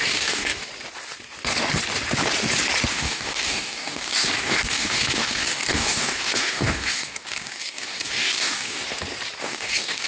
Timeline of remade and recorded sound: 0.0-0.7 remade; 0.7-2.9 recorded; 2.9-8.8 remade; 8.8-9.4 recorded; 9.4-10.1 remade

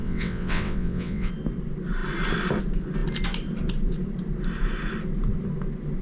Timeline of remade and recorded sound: 0.0-1.3 remade; 1.3-6.0 recorded

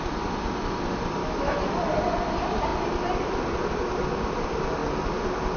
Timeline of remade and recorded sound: 0.0-1.2 recorded; 1.2-1.7 remade; 1.7-5.6 recorded

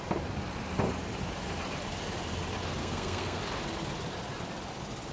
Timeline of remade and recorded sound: 0.0-2.8 recorded; 2.8-3.4 remade; 3.4-5.1 recorded

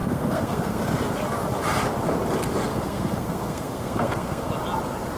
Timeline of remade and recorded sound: 0.0-0.8 remade; 0.8-2.7 recorded; 2.7-4.5 remade; 4.5-5.2 recorded